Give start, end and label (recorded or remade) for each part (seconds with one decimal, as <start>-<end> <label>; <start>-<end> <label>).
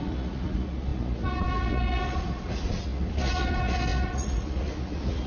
0.0-5.3 remade